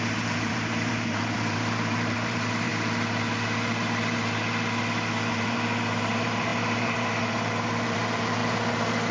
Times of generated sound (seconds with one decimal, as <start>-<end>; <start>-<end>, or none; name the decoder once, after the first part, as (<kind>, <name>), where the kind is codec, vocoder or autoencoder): 0.0-2.7 (vocoder, BigVGAN v2); 5.3-8.4